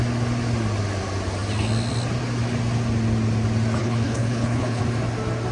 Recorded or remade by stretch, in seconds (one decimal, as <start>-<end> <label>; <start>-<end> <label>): 0.0-3.8 recorded; 3.8-4.8 remade; 4.8-5.5 recorded